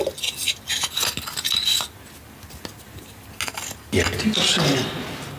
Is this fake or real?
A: real